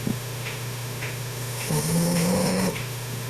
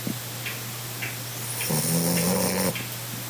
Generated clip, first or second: first